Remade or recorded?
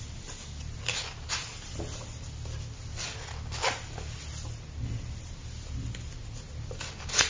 recorded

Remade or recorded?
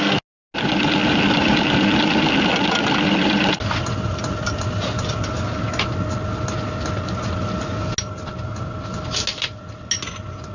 recorded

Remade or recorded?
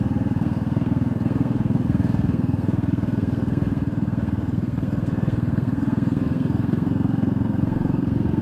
remade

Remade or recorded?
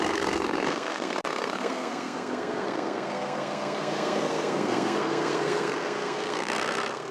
remade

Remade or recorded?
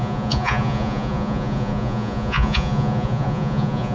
remade